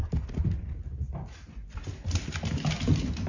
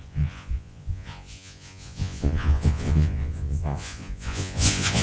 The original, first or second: first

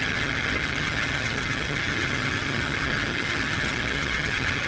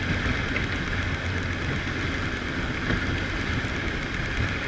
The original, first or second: second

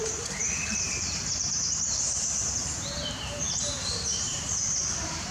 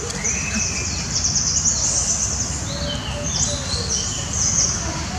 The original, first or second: second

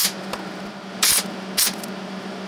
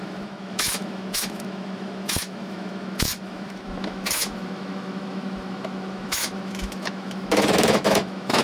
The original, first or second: first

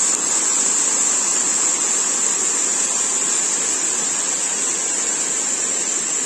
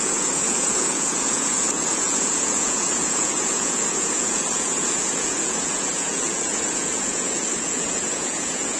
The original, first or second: first